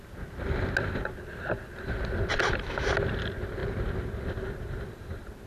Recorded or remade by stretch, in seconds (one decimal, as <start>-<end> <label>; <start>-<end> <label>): 0.0-5.5 recorded